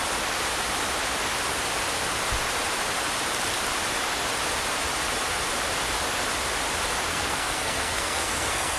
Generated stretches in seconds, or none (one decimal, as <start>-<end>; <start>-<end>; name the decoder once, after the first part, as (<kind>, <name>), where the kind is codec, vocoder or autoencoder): 7.1-8.8 (codec, SNAC)